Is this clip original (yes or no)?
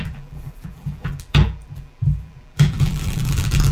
no